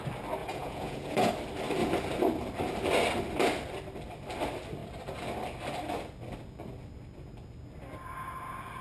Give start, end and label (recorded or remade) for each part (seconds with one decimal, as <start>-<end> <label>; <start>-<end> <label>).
0.0-0.4 recorded; 0.4-1.3 remade; 1.3-8.8 recorded